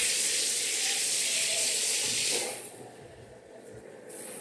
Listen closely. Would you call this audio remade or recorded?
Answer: remade